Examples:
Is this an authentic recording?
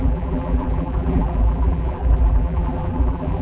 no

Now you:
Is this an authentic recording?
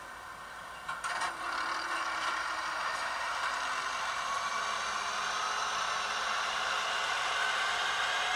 yes